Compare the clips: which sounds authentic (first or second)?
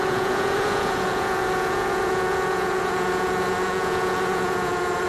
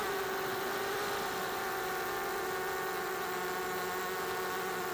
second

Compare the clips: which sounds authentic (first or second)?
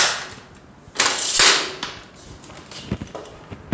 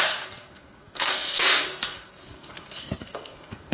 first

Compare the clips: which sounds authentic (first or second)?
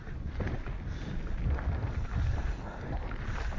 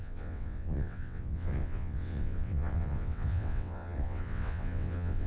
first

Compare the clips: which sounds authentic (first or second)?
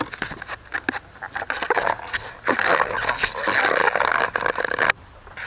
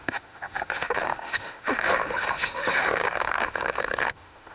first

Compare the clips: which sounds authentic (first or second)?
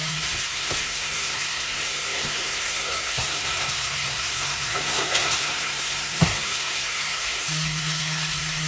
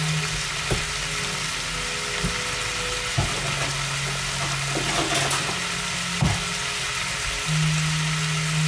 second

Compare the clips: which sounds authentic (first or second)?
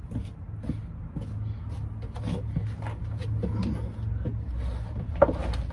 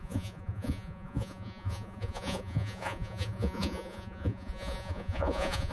first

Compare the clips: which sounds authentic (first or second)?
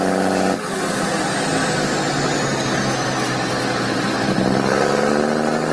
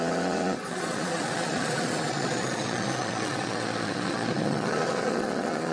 first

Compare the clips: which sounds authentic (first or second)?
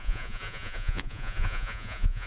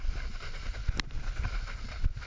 second